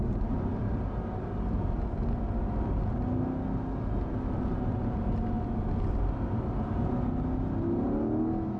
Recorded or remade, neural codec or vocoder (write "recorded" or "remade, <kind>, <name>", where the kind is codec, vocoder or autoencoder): recorded